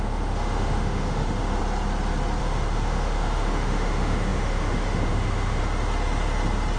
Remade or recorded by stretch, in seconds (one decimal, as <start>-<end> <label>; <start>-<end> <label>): 0.0-1.6 remade; 1.6-2.4 recorded; 2.4-5.6 remade; 5.6-6.8 recorded